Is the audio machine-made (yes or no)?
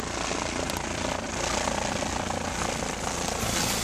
no